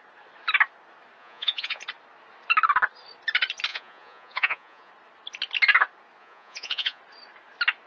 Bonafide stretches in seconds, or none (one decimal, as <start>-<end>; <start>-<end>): 0.0-1.2; 1.8-3.7; 4.9-6.2; 7.0-7.9